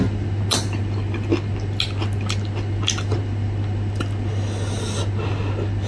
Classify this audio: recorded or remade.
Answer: recorded